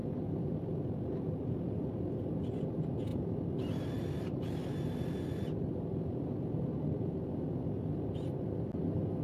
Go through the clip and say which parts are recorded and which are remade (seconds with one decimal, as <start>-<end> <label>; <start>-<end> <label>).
0.0-9.2 recorded